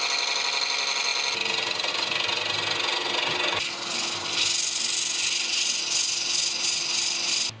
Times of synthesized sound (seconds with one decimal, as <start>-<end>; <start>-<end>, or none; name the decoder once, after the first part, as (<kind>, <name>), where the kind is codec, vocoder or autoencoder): none